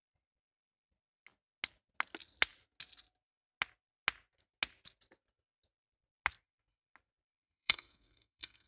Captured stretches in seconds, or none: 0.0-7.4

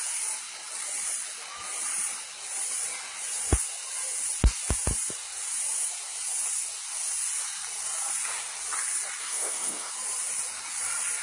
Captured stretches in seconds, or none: 0.0-9.2; 9.9-11.2

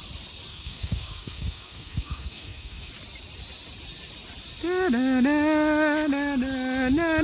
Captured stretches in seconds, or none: 0.0-0.5; 2.9-7.2

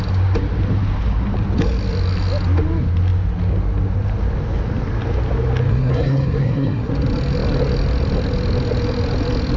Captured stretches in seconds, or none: 0.0-5.7; 6.9-9.6

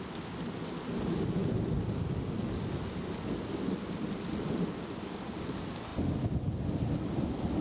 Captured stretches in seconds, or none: 0.0-7.6

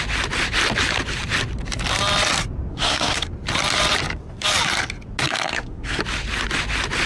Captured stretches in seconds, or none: 0.0-2.7; 3.3-5.2; 6.0-7.1